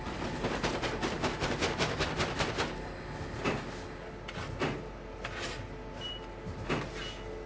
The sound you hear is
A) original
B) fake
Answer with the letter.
A